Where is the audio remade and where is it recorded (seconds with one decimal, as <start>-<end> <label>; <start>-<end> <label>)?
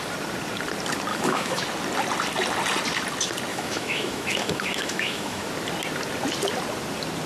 0.0-1.1 recorded; 1.1-1.6 remade; 1.6-3.5 recorded; 3.5-5.5 remade; 5.5-7.3 recorded